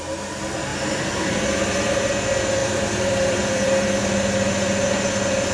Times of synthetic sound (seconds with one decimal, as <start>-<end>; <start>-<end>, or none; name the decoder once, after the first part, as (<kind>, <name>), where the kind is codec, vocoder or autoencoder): 0.7-2.1 (vocoder, BigVGAN v2); 2.6-4.0